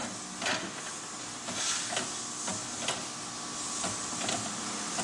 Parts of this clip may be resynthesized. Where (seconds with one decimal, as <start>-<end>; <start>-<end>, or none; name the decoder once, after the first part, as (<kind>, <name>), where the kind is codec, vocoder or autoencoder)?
none